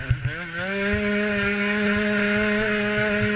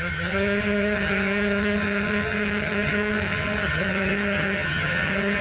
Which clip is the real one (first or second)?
first